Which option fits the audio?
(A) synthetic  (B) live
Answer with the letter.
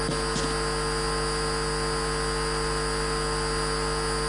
B